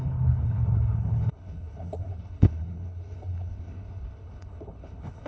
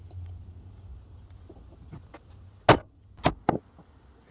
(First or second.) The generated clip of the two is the first